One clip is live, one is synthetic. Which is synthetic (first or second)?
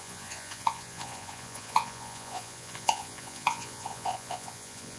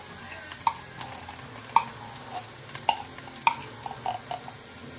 first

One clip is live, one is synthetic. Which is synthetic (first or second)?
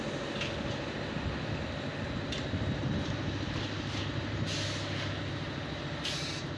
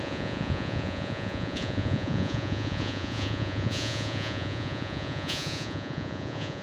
second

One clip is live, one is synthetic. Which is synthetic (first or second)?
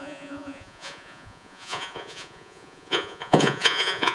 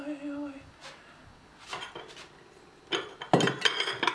first